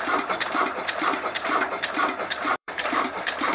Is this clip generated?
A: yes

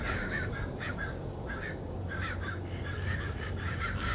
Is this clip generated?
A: yes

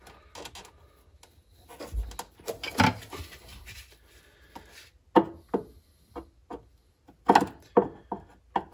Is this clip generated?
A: no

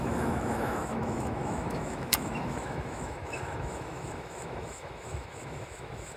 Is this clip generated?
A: yes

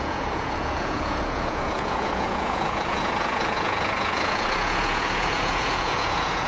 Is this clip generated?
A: yes